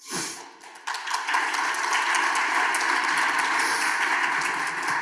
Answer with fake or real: real